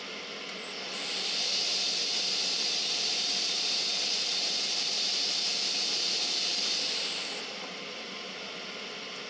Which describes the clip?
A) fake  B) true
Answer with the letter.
B